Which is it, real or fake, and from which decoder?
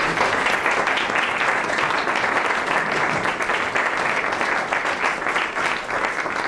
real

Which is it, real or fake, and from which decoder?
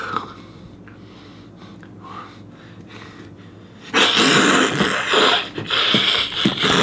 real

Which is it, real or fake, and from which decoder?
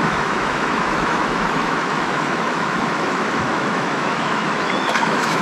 fake, autoencoder, DAC-VAE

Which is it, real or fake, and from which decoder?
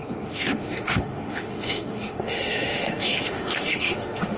fake, autoencoder, DAC-VAE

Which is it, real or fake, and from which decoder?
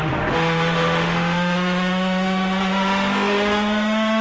fake, autoencoder, DAC-VAE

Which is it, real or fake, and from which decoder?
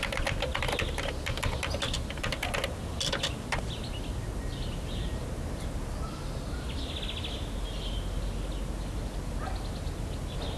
real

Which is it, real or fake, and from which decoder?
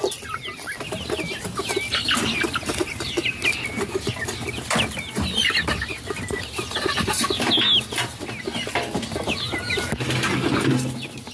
real